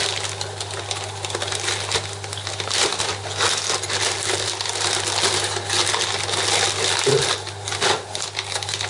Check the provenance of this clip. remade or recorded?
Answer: recorded